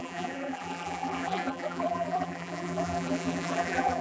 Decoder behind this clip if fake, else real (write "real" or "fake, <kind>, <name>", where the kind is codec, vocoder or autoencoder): fake, vocoder, BigVGAN v2